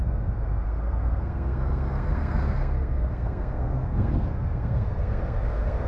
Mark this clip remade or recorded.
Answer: remade